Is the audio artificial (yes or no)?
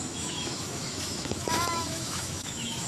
yes